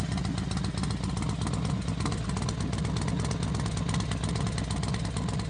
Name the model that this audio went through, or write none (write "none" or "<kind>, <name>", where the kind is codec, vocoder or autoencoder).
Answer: none